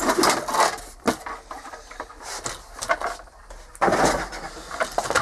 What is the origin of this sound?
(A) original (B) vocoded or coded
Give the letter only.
A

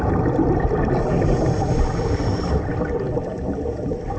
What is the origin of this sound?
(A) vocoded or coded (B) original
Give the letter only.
B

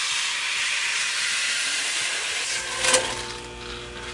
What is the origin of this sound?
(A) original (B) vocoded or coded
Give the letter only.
A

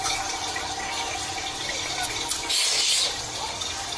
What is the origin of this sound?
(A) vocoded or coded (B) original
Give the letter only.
B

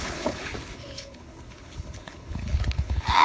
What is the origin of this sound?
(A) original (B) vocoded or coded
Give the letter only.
B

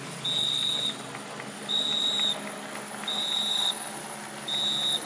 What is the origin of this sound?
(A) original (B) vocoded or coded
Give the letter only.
A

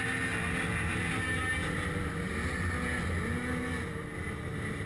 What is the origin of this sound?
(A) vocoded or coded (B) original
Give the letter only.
B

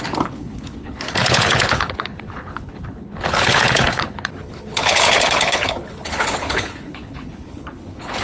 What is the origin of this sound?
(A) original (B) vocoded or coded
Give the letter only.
B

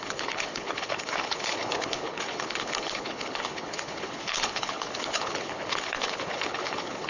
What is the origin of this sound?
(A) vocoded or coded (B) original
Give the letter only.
A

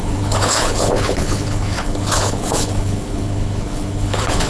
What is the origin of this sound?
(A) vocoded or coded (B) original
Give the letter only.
A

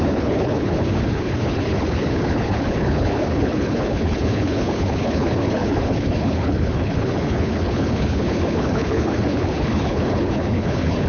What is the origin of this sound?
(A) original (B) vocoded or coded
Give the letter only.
B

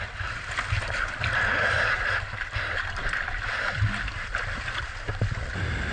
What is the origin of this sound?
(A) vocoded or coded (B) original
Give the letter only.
B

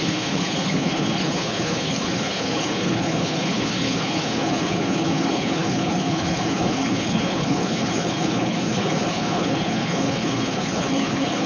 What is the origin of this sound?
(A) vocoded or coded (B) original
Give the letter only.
A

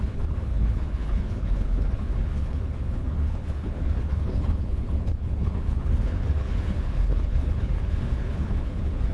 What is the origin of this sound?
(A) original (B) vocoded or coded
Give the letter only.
B